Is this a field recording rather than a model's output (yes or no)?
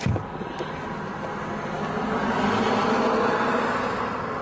yes